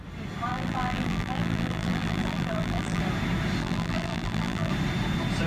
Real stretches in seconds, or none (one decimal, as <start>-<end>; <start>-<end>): 0.0-0.5; 3.0-3.6; 4.7-5.5